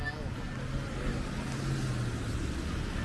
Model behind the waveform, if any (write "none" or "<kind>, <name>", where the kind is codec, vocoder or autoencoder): none